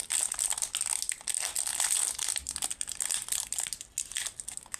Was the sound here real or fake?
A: real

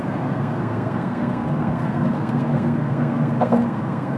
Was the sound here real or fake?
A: fake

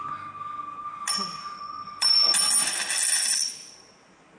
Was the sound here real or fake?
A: real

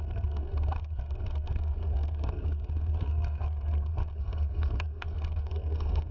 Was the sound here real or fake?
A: fake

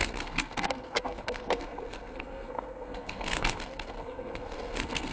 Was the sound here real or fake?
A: fake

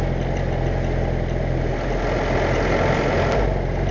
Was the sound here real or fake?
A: real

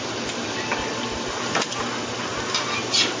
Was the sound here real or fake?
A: real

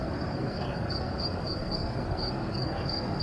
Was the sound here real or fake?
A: fake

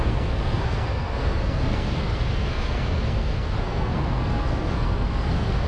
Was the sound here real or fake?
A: fake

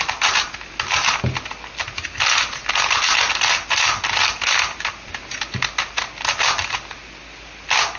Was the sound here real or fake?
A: real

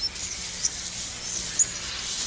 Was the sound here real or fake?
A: real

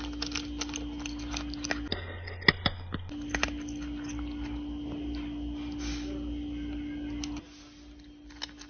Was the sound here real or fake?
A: real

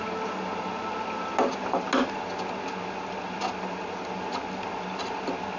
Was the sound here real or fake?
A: real